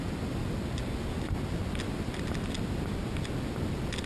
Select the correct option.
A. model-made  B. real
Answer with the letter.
B